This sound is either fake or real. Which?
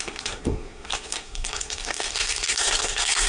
fake